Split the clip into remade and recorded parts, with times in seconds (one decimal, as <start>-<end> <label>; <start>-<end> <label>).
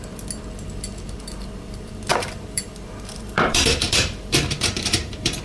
0.0-2.1 recorded; 2.1-5.4 remade